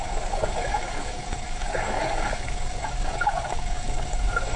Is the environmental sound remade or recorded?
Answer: remade